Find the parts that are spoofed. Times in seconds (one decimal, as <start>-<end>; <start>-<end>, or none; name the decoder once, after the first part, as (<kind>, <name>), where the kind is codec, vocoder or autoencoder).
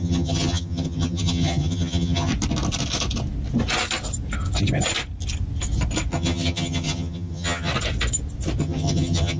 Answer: 0.0-2.3 (vocoder, HiFi-GAN); 6.1-7.7; 8.6-9.4